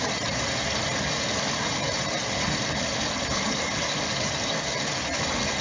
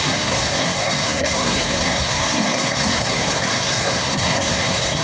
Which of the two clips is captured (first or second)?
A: first